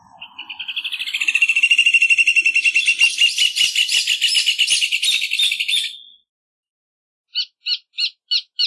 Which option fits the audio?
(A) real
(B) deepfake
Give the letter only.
A